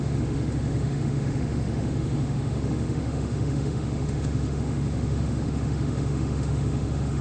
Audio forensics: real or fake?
fake